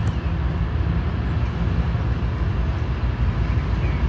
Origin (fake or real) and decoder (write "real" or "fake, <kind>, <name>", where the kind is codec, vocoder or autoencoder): real